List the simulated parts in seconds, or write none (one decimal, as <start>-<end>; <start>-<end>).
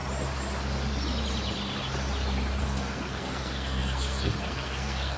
2.6-5.2